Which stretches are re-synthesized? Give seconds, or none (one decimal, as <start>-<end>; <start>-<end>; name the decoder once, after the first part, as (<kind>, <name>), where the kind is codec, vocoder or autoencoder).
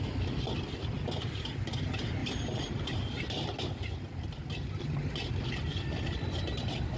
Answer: 2.2-3.0 (vocoder, BigVGAN v2)